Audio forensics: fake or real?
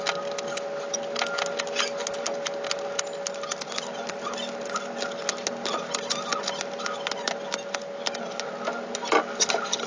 real